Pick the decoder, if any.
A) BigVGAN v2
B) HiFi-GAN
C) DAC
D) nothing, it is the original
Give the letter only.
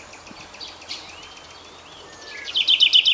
D